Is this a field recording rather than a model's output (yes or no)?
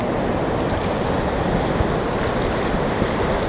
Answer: yes